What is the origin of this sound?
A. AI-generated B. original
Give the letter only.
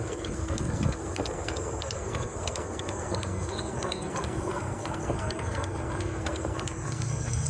A